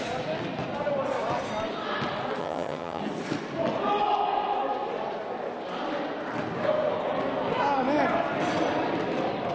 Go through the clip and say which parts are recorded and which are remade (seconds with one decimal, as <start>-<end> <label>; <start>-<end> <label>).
0.0-2.4 recorded; 2.4-3.0 remade; 3.0-9.5 recorded